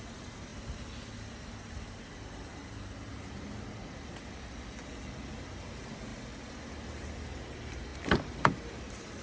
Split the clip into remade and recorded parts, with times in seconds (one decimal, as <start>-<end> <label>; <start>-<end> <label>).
0.0-7.9 recorded; 7.9-9.2 remade